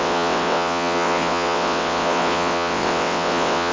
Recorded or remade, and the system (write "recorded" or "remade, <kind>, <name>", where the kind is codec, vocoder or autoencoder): remade, vocoder, WaveNeXt